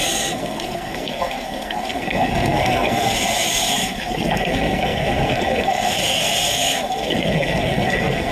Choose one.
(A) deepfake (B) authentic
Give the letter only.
A